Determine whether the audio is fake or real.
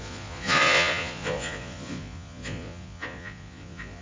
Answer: fake